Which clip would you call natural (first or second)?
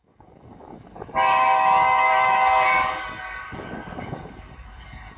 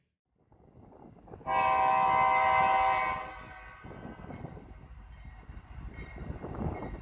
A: second